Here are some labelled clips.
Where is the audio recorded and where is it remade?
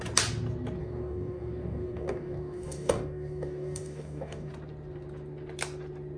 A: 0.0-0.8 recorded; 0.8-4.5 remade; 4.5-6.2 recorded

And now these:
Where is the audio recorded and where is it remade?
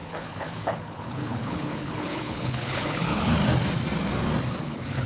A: 0.0-3.4 remade; 3.4-4.6 recorded; 4.6-5.1 remade